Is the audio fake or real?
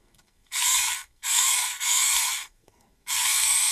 fake